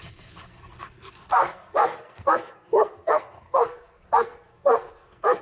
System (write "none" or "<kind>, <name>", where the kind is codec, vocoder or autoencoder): codec, SNAC